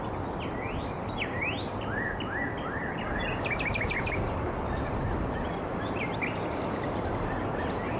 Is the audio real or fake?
real